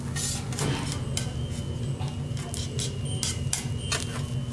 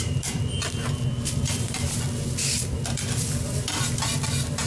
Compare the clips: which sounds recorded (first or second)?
first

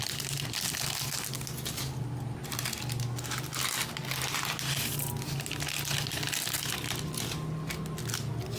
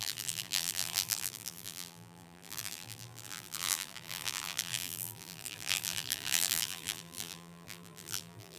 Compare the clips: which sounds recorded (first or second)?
first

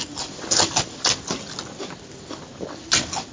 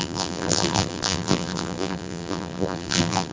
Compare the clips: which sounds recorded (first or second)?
first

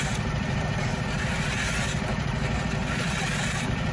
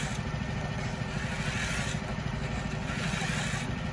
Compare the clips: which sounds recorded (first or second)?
second